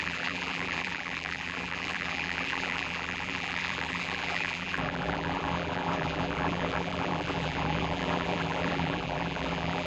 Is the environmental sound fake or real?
fake